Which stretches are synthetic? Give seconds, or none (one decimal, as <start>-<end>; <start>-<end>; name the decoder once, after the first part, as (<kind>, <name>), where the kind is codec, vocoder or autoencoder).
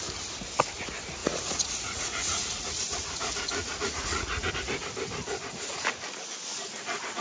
1.2-4.5 (vocoder, Vocos)